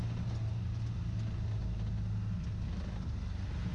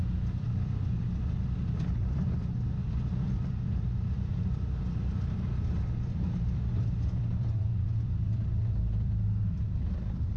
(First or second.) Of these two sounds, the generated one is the second